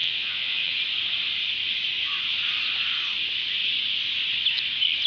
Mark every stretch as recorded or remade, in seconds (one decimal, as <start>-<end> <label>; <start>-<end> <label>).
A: 0.0-0.7 remade; 0.7-5.1 recorded